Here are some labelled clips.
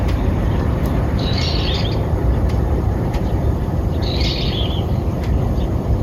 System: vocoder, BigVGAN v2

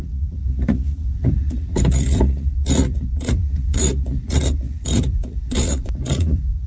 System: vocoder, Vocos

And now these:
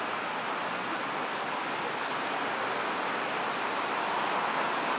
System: none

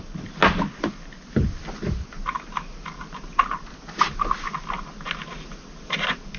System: none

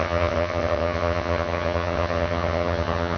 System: vocoder, HiFi-GAN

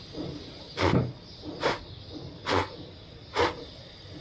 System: none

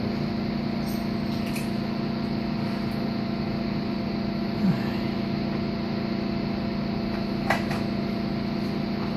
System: none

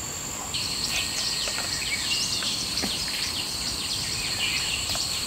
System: none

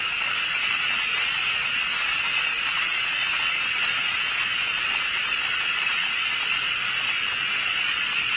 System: vocoder, Vocos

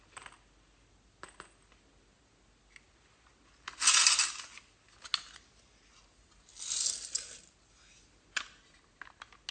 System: none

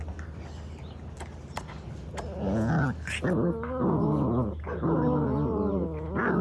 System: none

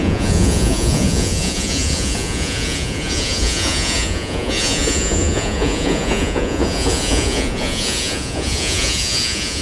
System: vocoder, Vocos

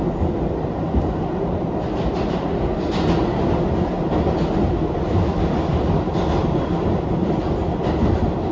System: none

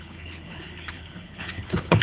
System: codec, HILCodec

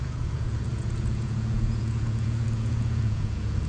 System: vocoder, Vocos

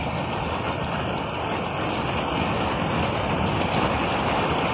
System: none